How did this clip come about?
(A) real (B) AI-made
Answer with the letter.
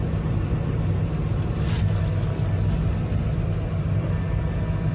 A